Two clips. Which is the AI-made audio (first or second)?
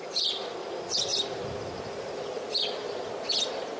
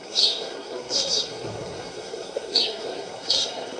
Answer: second